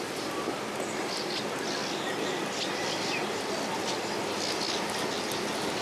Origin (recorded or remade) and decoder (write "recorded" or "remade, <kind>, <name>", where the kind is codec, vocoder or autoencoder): recorded